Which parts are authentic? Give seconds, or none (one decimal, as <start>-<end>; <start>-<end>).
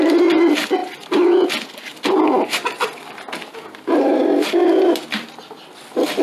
0.0-0.8; 1.5-4.6